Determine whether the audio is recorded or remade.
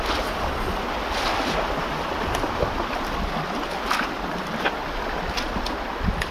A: recorded